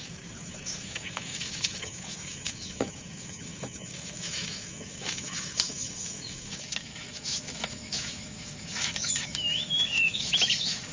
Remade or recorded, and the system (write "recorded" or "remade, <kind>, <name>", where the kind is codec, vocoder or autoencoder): remade, autoencoder, DAC-VAE